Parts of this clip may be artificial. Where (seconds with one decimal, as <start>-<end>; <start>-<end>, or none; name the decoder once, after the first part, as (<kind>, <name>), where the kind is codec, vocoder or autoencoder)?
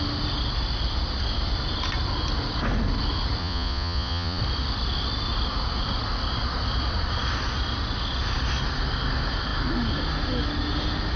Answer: 3.4-4.4 (vocoder, Vocos)